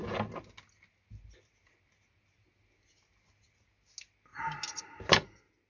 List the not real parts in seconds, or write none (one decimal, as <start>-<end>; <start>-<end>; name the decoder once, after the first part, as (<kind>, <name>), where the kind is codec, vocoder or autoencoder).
none